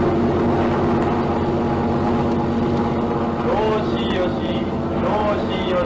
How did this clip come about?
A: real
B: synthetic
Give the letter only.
A